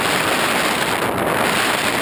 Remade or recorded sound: recorded